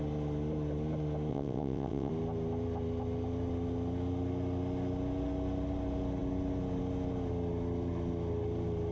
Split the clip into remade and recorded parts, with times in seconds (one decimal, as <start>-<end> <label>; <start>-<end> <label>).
0.0-1.3 recorded; 1.3-2.1 remade; 2.1-8.9 recorded